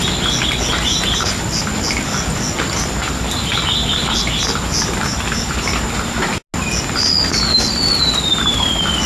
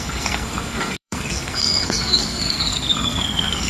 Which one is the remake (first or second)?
second